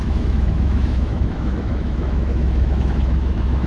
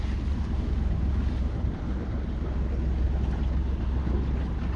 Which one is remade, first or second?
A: first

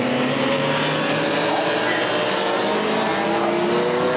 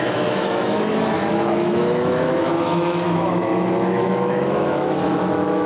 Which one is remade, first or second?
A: second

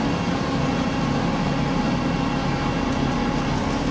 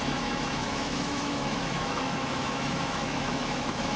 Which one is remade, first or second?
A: second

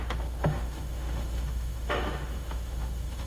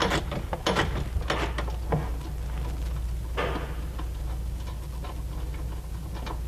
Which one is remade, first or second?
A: first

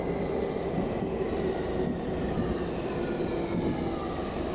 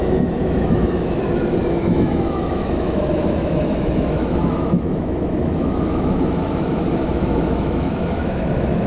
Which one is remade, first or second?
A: second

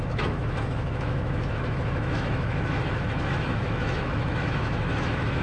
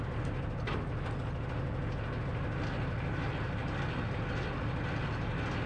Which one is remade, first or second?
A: first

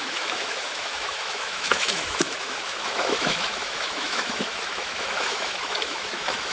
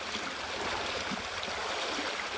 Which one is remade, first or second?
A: first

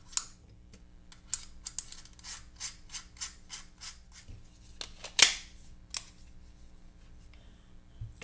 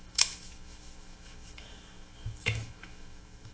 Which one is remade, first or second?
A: second